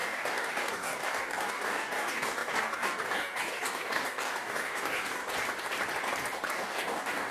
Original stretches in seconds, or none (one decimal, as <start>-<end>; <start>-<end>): 5.2-6.5